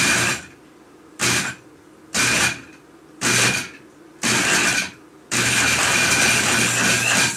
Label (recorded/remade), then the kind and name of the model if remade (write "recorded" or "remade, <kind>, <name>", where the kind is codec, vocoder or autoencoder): recorded